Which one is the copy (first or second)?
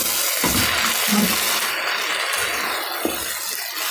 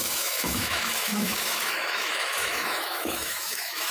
second